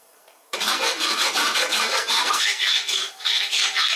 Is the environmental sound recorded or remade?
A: remade